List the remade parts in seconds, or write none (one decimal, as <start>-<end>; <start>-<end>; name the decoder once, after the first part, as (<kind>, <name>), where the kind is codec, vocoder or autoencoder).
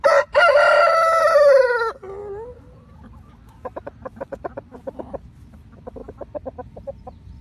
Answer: none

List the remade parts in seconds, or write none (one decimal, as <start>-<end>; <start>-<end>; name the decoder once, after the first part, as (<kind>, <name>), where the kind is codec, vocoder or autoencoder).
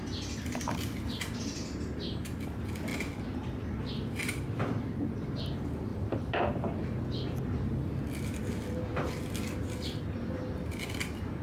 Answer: 5.9-7.0 (vocoder, BigVGAN v2)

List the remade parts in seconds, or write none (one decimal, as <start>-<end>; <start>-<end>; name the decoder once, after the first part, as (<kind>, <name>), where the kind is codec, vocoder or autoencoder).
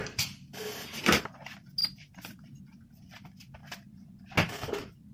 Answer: 0.0-1.2 (vocoder, BigVGAN v2); 1.8-2.6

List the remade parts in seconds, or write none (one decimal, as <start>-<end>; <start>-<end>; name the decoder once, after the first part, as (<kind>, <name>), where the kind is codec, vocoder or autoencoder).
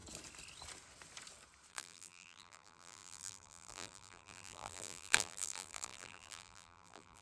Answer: 1.7-7.2 (vocoder, BigVGAN v2)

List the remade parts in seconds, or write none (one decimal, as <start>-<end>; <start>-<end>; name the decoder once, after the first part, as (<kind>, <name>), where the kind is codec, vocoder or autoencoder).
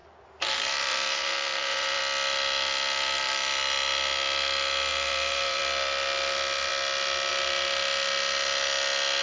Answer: 0.0-2.0 (vocoder, BigVGAN v2); 4.9-5.6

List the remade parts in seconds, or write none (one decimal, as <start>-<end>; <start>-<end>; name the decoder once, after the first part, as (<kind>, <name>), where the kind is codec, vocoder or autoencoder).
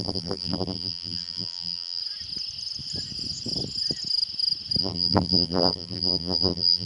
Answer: 0.0-2.0 (vocoder, BigVGAN v2); 4.8-6.9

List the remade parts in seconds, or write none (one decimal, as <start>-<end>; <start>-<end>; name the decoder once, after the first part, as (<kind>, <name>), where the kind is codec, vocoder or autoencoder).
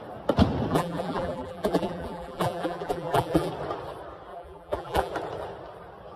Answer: 0.7-3.5 (vocoder, BigVGAN v2); 4.3-5.1